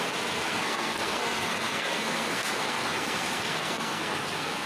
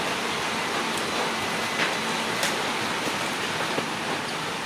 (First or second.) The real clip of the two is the second